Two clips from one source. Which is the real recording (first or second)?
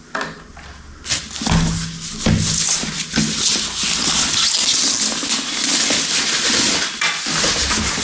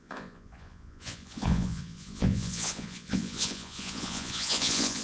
first